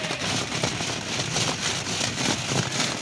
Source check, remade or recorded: recorded